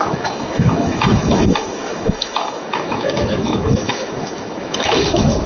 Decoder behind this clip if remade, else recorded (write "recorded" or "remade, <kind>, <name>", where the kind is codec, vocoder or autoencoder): remade, autoencoder, DAC-VAE